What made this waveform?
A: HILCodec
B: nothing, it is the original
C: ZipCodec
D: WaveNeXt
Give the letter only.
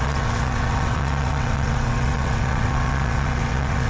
D